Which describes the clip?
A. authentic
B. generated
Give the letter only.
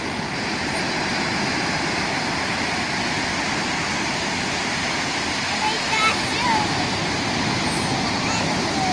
A